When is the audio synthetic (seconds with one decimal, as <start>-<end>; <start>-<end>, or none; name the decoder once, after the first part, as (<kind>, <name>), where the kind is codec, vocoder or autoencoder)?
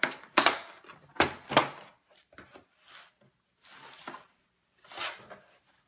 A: none